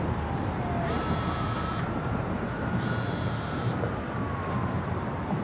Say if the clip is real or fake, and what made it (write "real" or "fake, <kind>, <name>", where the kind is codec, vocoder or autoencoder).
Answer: fake, vocoder, BigVGAN v2